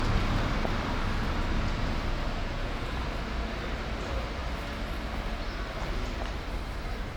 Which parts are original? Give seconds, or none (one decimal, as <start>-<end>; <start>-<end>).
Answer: 0.0-2.4; 3.0-7.2